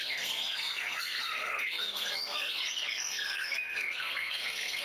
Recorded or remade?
remade